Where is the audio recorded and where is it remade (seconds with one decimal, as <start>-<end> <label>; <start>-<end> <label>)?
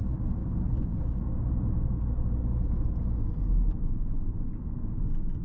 0.0-5.4 recorded